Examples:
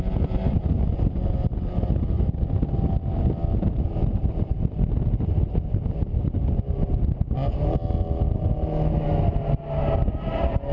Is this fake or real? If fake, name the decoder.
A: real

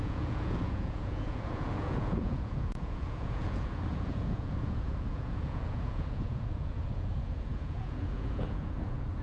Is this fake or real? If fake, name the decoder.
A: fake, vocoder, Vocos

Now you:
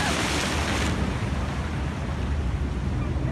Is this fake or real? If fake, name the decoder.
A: real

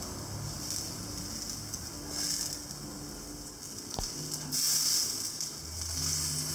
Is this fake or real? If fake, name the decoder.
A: real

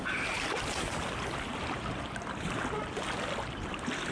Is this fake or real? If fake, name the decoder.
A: real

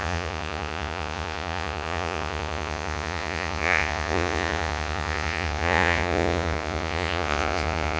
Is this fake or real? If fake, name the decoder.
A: fake, vocoder, Vocos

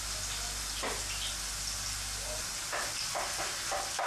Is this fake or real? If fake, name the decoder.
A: real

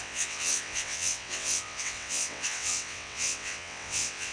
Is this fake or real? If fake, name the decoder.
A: fake, vocoder, WaveNeXt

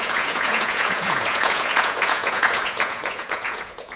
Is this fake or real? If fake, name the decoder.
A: fake, vocoder, Vocos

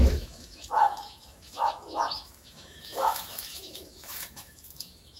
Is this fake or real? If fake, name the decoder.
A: fake, autoencoder, DAC-VAE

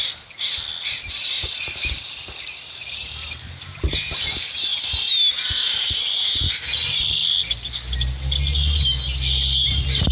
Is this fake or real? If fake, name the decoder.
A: real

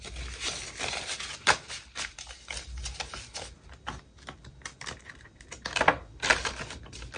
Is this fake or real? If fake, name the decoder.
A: real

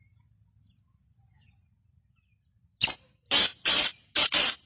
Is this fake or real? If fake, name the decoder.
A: real